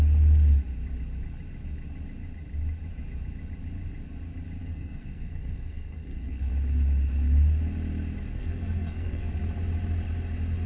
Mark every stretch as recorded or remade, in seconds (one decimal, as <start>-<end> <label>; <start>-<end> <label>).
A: 0.0-4.6 recorded; 4.6-6.5 remade; 6.5-8.3 recorded; 8.3-9.2 remade; 9.2-10.7 recorded